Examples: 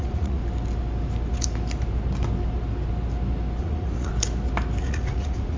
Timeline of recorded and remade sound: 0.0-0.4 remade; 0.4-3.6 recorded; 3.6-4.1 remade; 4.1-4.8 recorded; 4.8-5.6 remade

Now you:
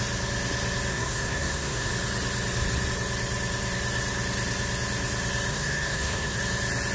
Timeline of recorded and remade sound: 0.0-0.9 recorded; 0.9-1.9 remade; 1.9-5.5 recorded; 5.5-6.4 remade; 6.4-6.9 recorded

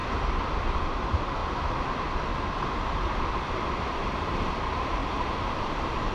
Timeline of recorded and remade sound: 0.0-1.4 remade; 1.4-3.5 recorded; 3.5-5.0 remade; 5.0-5.6 recorded; 5.6-6.1 remade

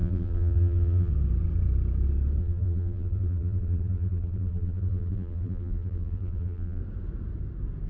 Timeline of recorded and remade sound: 0.0-1.1 remade; 1.1-2.4 recorded; 2.4-6.8 remade; 6.8-7.9 recorded

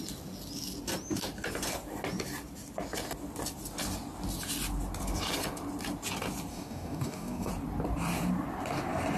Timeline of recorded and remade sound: 0.0-6.5 recorded; 6.5-7.5 remade; 7.5-9.2 recorded

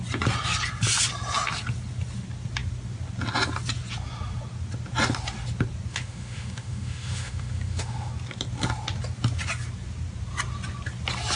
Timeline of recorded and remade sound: 0.0-5.9 recorded; 5.9-8.1 remade; 8.1-11.4 recorded

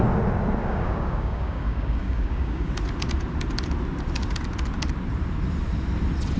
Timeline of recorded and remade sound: 0.0-0.6 recorded; 0.6-2.7 remade; 2.7-6.4 recorded

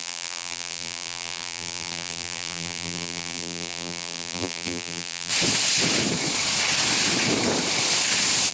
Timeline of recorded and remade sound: 0.0-5.3 remade; 5.3-8.5 recorded